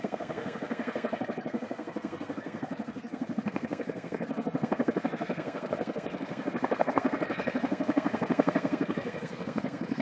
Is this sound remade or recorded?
remade